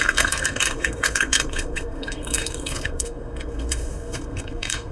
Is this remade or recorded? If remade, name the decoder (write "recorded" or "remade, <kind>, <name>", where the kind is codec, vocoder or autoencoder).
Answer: remade, codec, SNAC